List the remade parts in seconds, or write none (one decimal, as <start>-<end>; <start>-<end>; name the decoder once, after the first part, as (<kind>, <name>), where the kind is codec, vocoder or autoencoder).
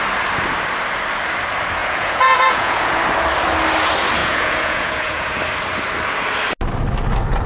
1.8-3.0 (vocoder, Vocos); 4.2-5.3